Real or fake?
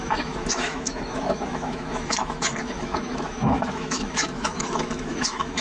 fake